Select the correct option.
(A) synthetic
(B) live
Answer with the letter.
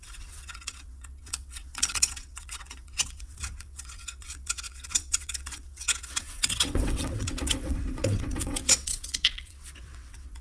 A